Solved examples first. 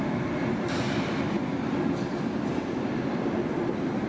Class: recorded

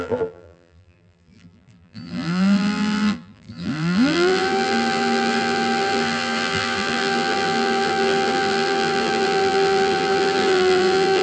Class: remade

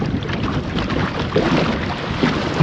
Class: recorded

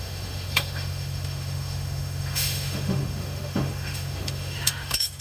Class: remade